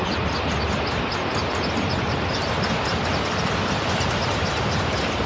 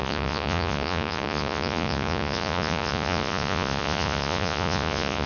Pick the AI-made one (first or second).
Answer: second